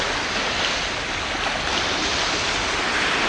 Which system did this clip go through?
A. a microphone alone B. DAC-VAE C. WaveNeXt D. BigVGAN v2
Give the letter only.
A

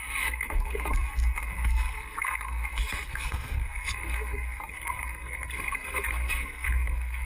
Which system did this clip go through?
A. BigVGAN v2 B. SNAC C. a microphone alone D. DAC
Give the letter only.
B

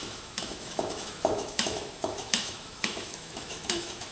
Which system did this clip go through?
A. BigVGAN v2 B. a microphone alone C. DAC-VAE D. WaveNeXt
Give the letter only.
C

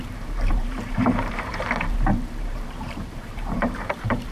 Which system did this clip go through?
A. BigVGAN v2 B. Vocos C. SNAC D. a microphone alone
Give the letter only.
A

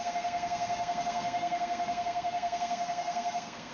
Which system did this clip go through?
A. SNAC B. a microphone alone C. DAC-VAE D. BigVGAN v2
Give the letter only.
A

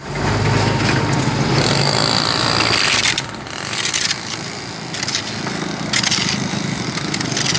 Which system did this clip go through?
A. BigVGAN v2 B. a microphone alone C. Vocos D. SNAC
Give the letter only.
B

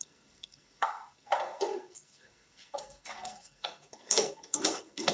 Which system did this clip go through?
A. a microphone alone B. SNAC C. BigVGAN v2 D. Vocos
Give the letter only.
B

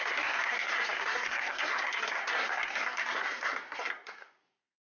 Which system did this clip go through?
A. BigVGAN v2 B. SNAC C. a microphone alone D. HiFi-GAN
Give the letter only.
B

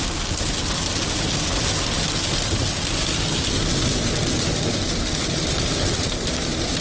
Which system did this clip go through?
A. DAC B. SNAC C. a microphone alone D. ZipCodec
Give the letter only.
C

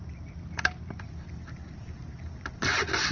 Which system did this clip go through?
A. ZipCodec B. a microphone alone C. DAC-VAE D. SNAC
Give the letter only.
B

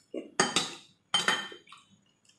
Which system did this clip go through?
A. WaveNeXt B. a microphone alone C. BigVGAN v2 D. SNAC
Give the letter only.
B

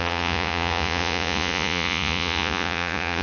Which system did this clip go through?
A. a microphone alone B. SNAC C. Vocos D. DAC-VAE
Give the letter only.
C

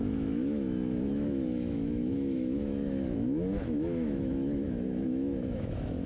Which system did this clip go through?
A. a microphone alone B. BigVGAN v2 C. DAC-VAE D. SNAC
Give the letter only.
C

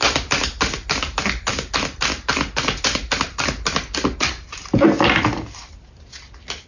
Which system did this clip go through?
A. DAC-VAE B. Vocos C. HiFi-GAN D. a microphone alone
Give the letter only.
D